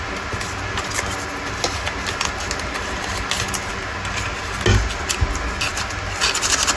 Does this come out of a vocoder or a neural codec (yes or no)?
no